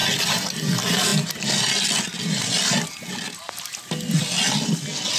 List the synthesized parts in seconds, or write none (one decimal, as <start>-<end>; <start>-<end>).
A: none